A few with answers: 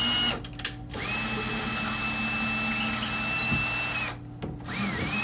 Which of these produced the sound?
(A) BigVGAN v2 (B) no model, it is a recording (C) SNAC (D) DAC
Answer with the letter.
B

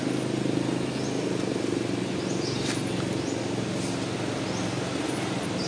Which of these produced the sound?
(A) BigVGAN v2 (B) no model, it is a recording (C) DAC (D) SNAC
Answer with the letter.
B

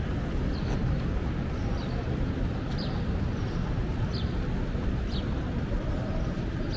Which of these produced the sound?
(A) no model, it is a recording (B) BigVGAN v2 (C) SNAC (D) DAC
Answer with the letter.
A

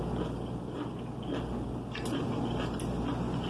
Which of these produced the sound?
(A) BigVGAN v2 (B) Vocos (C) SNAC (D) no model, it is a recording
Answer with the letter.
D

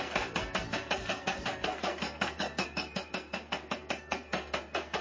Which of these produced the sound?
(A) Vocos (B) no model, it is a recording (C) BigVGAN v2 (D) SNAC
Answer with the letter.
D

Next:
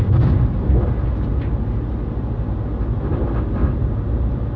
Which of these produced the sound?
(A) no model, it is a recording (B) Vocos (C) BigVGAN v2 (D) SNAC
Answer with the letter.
A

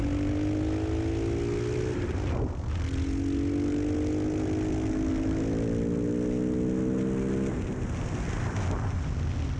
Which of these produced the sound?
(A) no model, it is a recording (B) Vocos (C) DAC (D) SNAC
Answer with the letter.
A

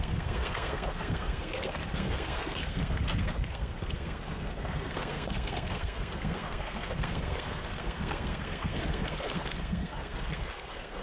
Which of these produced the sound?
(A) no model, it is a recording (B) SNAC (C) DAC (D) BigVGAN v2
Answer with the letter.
B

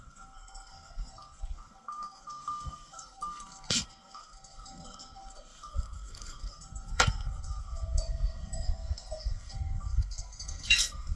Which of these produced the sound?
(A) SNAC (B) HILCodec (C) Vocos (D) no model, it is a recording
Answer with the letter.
A